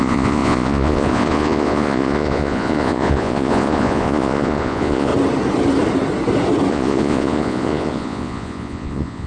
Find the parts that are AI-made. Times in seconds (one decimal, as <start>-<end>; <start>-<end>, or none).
0.0-5.1; 6.7-9.3